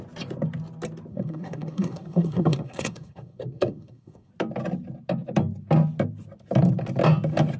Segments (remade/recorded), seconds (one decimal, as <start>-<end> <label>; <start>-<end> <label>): 0.0-1.1 recorded; 1.1-4.3 remade; 4.3-7.6 recorded